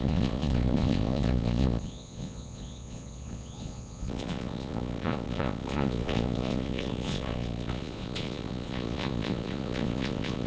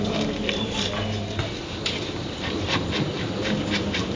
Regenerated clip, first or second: first